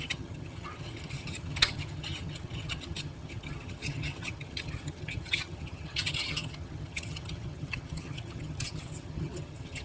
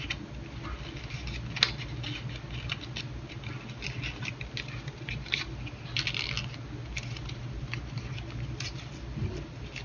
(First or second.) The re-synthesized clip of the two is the first